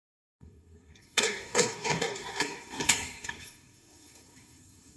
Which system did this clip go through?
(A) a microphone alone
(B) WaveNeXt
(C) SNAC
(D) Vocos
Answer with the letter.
C